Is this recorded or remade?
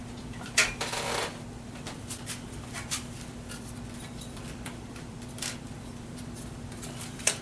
remade